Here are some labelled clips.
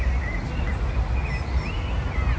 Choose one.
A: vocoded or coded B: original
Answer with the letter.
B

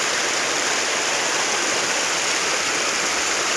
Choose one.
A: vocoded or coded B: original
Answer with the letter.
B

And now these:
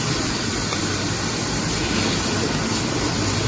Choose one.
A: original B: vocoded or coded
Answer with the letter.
A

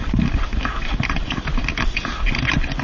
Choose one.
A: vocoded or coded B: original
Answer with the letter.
B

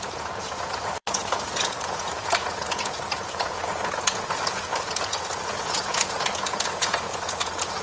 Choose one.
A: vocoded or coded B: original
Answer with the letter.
A